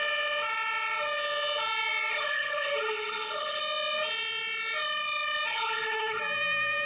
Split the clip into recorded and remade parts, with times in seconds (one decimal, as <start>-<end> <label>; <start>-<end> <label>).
0.0-2.1 recorded; 2.1-3.6 remade; 3.6-5.5 recorded; 5.5-6.2 remade; 6.2-6.9 recorded